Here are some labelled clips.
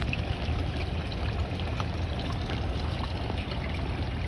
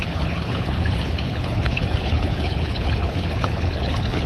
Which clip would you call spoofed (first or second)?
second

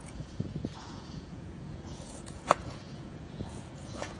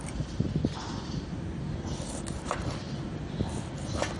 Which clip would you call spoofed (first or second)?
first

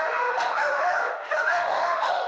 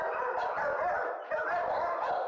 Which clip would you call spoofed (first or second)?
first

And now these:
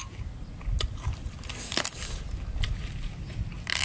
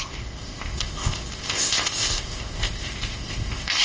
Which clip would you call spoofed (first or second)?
second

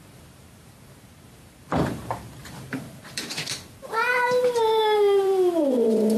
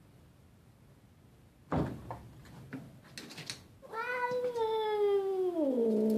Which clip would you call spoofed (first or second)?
first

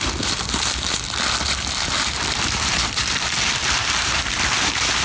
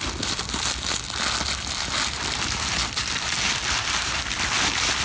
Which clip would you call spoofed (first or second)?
first